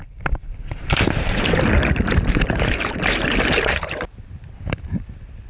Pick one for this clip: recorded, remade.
remade